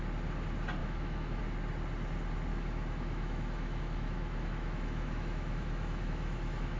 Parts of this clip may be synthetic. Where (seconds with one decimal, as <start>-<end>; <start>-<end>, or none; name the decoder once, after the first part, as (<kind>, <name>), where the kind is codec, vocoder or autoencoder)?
0.8-1.4 (autoencoder, DAC-VAE); 2.5-6.8